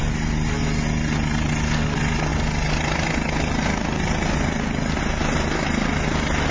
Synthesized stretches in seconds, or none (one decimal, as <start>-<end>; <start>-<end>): none

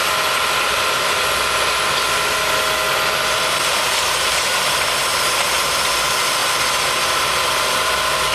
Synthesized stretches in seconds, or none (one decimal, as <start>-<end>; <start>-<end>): none

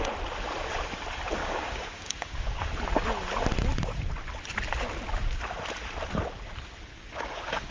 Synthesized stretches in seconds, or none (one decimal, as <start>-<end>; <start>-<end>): 1.4-2.7; 6.9-7.7

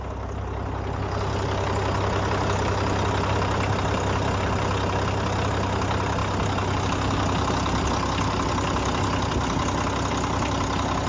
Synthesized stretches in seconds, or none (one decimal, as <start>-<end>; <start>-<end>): none

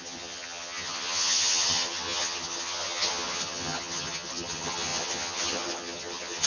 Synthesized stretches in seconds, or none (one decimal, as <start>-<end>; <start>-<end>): 0.0-6.5

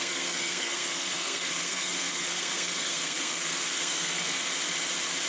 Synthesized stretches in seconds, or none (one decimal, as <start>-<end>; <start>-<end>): 0.0-4.5